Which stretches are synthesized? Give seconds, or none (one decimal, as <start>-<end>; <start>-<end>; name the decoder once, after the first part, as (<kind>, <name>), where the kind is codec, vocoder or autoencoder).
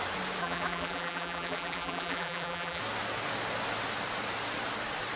0.4-2.8 (vocoder, BigVGAN v2)